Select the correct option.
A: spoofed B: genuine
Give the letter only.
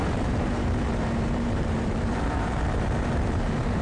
A